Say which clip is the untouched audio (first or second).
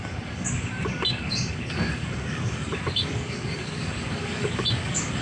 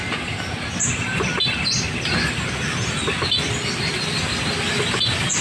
second